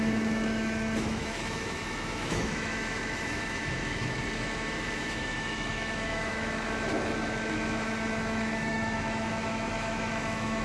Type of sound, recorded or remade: remade